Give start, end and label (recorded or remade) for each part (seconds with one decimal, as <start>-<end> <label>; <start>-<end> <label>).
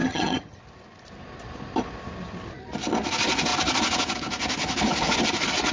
0.0-0.6 remade; 0.6-5.7 recorded